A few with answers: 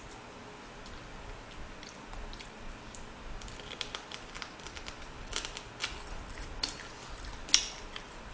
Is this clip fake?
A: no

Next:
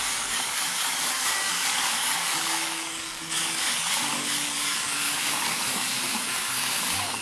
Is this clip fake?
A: yes